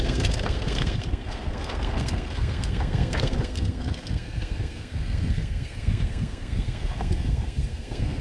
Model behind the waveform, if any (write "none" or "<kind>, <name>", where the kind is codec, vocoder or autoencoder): codec, SNAC